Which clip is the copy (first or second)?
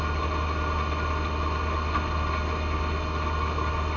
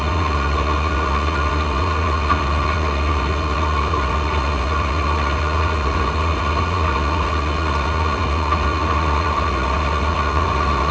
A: second